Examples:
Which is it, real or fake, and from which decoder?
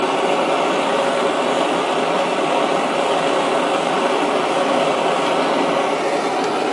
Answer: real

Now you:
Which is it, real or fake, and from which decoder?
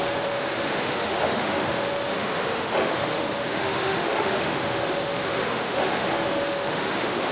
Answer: fake, autoencoder, DAC-VAE